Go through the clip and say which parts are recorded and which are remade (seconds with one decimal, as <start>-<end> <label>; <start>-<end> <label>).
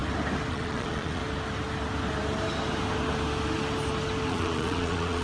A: 0.0-0.5 recorded; 0.5-1.2 remade; 1.2-4.3 recorded; 4.3-5.2 remade